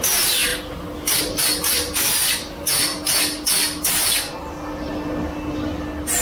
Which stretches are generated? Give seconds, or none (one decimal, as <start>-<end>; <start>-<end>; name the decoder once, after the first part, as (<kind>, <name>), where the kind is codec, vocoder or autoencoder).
none